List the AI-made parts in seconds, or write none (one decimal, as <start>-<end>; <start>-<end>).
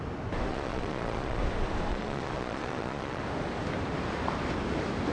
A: 0.5-1.4; 1.9-3.2